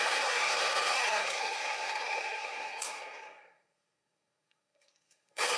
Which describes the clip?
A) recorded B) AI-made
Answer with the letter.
B